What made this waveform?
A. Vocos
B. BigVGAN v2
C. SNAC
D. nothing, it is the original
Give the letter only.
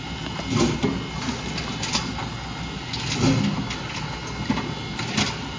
D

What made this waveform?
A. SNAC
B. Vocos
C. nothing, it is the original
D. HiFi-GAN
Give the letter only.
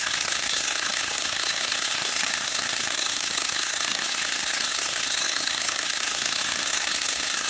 A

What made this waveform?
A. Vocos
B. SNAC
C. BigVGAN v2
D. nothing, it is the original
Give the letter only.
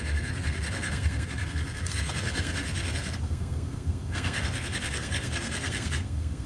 B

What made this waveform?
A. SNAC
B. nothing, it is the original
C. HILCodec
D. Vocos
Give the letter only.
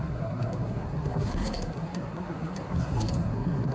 A